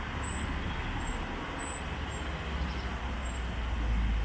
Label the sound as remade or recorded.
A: recorded